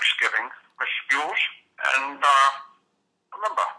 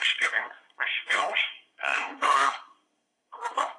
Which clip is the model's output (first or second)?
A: second